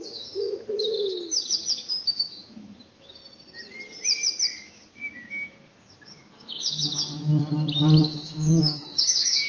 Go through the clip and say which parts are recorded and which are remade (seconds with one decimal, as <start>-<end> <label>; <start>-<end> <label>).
0.0-3.2 remade; 3.2-4.7 recorded; 4.7-7.3 remade; 7.3-8.0 recorded; 8.0-9.5 remade